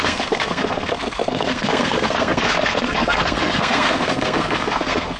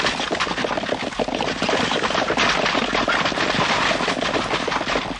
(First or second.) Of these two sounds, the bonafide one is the second